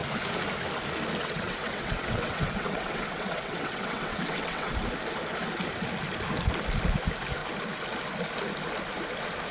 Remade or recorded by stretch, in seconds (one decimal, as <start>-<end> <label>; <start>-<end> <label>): 0.0-1.2 recorded; 1.2-4.7 remade; 4.7-9.5 recorded